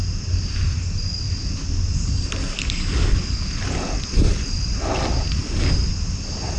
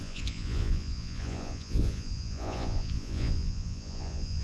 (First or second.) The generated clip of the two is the second